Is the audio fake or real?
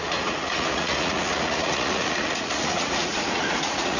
fake